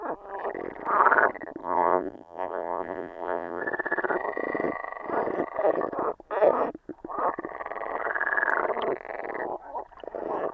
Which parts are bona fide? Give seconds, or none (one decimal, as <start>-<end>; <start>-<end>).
0.0-1.6; 3.6-10.5